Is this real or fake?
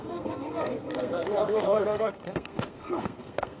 fake